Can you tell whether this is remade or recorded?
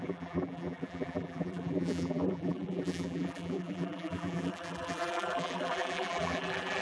remade